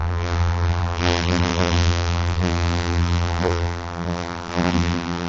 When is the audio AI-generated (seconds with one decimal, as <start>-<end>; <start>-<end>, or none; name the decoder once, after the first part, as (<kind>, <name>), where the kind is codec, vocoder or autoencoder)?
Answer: 0.0-5.3 (vocoder, BigVGAN v2)